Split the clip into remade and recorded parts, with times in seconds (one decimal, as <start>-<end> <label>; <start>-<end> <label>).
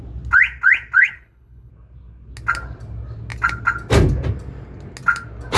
0.0-1.0 recorded; 1.0-1.7 remade; 1.7-5.6 recorded